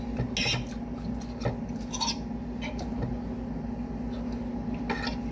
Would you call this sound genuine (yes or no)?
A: yes